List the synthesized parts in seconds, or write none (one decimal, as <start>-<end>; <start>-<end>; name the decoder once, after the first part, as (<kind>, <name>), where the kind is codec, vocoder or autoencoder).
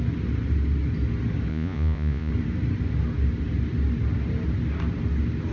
1.5-2.3 (vocoder, Vocos)